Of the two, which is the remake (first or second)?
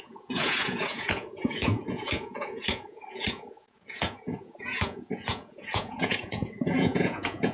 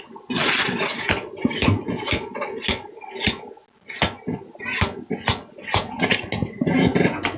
first